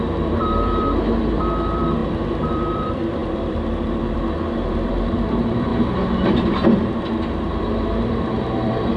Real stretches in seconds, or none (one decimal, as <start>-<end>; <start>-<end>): 5.7-6.3